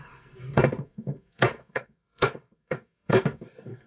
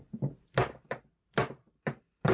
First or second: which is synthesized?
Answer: first